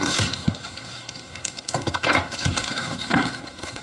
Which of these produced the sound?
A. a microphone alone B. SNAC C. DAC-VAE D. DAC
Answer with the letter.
B